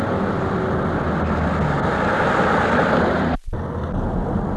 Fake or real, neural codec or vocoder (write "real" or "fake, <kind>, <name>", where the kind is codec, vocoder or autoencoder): real